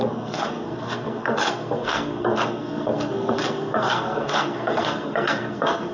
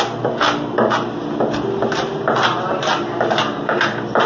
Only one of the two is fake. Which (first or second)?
first